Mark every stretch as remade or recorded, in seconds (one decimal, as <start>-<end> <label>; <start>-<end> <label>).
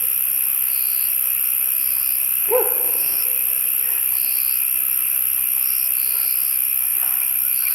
0.0-2.4 recorded; 2.4-3.2 remade; 3.2-7.7 recorded